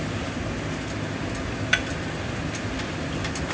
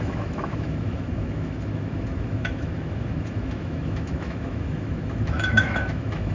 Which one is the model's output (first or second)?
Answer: second